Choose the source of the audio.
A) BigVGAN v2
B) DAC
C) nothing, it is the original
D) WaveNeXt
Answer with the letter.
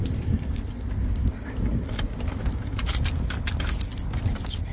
C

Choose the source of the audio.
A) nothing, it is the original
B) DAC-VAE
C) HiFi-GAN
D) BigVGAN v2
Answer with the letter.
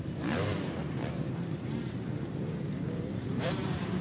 D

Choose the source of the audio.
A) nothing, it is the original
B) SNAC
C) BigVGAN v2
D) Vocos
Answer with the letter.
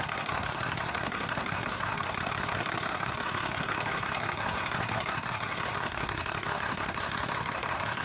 B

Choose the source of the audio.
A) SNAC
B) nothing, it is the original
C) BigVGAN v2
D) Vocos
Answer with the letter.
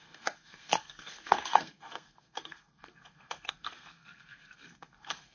A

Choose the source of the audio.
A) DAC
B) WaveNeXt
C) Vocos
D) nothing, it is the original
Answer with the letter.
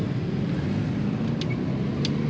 D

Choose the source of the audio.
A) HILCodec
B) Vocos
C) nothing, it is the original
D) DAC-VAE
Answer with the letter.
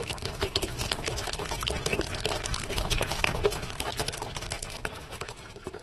D